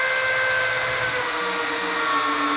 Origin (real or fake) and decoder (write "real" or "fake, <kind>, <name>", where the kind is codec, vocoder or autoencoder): real